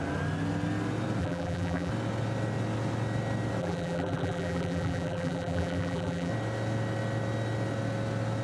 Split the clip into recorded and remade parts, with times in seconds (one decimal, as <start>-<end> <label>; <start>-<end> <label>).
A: 0.0-1.2 recorded; 1.2-1.9 remade; 1.9-3.6 recorded; 3.6-6.3 remade; 6.3-8.4 recorded